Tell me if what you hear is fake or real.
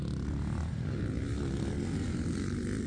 real